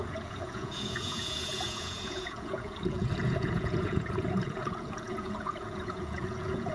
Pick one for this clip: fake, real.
fake